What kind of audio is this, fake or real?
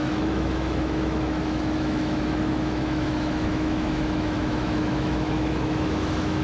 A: fake